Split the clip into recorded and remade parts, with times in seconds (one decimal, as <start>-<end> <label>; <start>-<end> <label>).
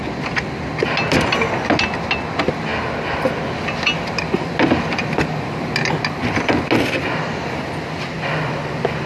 0.0-9.1 recorded